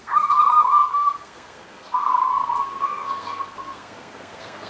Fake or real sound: fake